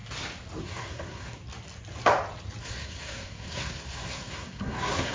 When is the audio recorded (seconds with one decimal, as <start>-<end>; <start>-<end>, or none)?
0.0-0.6; 1.4-2.6